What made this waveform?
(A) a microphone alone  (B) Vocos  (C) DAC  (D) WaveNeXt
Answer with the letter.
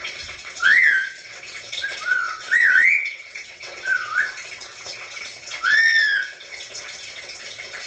D